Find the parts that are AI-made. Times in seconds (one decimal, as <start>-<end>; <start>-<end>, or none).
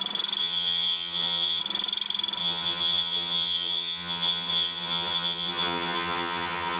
0.4-1.6; 2.4-6.8